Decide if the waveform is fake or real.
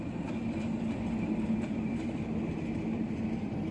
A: real